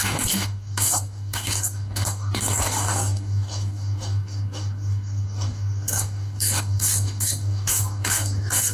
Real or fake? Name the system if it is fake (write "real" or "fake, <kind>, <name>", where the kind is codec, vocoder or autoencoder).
fake, codec, DAC